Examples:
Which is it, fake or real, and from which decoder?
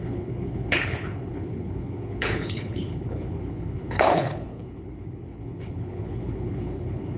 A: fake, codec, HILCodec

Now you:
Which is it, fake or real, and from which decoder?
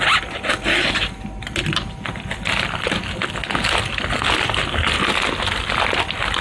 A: real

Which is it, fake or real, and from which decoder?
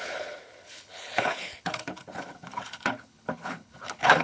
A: fake, codec, HILCodec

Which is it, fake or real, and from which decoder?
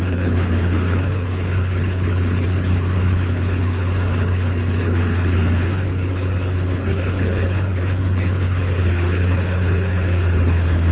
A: fake, codec, HILCodec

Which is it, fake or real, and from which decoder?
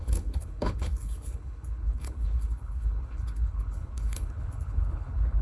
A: fake, codec, HILCodec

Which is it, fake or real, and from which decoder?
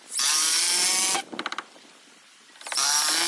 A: real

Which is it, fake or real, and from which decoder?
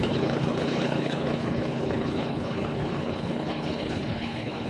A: fake, codec, HILCodec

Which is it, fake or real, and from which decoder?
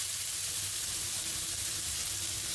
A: real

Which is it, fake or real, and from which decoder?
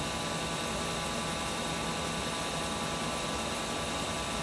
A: real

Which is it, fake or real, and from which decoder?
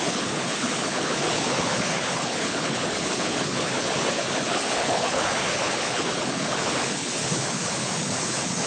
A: fake, codec, HILCodec